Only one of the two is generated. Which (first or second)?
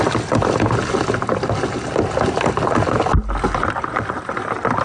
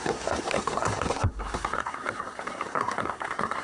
second